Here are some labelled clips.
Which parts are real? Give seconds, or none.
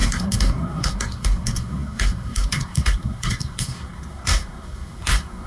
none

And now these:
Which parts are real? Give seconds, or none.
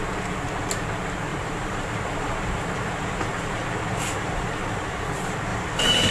0.0-1.3; 5.0-5.5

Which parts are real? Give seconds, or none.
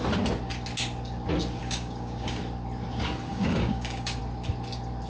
0.0-1.6; 2.4-3.3; 4.2-5.1